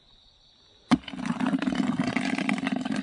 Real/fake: real